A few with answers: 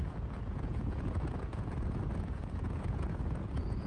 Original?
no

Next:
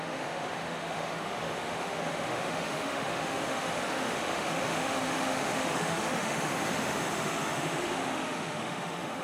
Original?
no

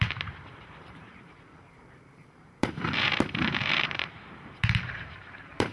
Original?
no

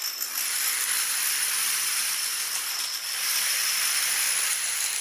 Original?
yes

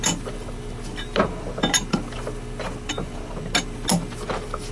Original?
yes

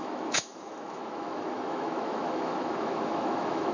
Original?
no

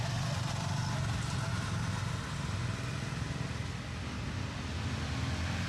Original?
yes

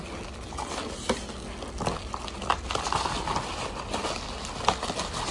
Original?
yes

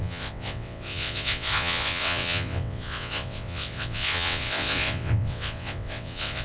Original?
no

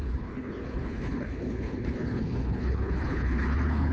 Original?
no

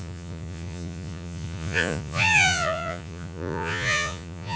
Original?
no